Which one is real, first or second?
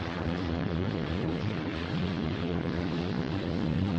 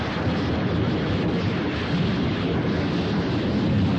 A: second